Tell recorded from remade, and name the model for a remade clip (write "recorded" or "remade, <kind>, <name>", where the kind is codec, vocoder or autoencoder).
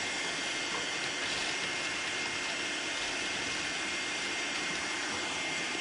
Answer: remade, vocoder, BigVGAN v2